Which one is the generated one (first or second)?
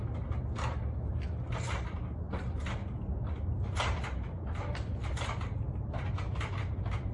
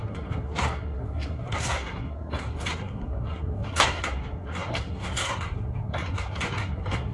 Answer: second